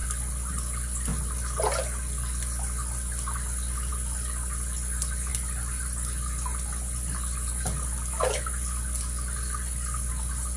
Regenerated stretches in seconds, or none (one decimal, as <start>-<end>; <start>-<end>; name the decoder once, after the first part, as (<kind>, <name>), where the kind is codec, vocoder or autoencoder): none

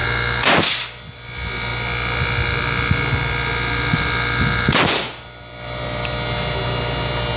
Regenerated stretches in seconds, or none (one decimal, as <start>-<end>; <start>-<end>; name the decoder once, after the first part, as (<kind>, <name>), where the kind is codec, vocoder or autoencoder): none

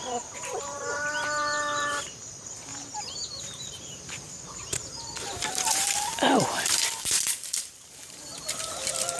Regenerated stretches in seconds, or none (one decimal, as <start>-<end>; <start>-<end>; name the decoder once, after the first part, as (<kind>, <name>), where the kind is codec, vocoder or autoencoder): 0.0-2.7 (vocoder, BigVGAN v2); 3.4-8.3